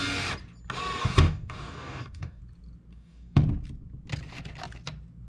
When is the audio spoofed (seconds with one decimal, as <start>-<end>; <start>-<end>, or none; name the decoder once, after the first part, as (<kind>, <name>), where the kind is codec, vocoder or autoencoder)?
1.0-2.4 (codec, DAC); 2.9-3.4